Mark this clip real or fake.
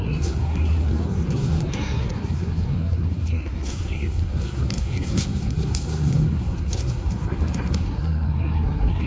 fake